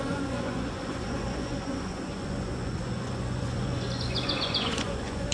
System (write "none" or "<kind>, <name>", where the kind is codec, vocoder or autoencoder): vocoder, Vocos